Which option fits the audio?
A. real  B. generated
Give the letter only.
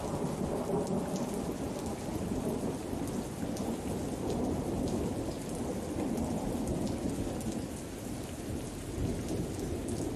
A